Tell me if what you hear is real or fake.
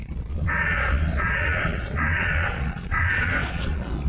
fake